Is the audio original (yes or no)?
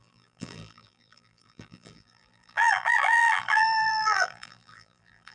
no